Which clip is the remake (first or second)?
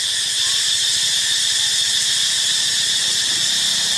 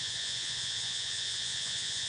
second